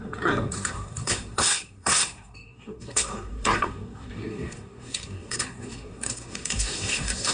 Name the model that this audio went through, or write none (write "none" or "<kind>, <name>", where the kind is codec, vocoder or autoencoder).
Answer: codec, SNAC